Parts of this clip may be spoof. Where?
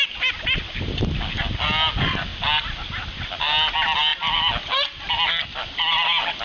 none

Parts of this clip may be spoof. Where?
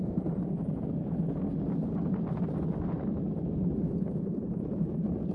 0.0-1.0 (vocoder, BigVGAN v2); 4.2-5.3